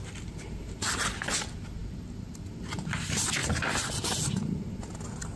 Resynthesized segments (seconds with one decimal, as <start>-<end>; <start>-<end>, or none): 3.4-4.6